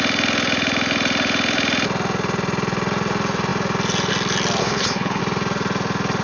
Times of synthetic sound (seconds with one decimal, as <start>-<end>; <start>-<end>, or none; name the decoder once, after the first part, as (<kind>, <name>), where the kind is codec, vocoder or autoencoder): 4.6-5.2 (codec, HILCodec)